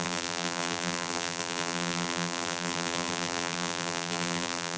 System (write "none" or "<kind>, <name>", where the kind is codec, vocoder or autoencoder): vocoder, BigVGAN v2